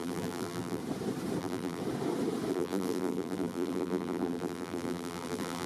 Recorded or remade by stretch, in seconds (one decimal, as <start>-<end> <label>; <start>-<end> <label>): 0.0-0.8 remade; 0.8-1.4 recorded; 1.4-1.8 remade; 1.8-2.5 recorded; 2.5-5.7 remade